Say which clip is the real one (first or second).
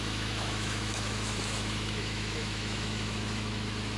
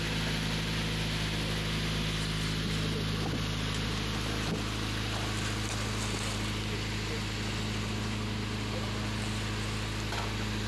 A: second